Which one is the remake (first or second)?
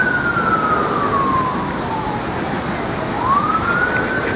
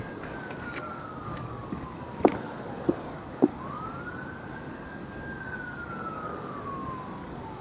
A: second